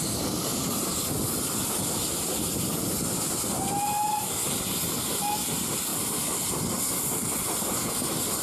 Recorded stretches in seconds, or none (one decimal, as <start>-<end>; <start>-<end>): 0.0-8.4